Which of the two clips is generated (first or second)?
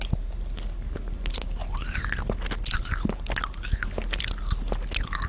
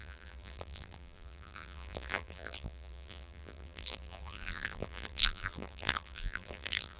second